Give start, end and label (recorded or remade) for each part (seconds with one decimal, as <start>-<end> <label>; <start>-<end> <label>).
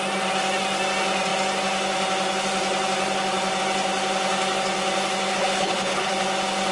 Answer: 0.0-5.3 recorded; 5.3-6.1 remade; 6.1-6.7 recorded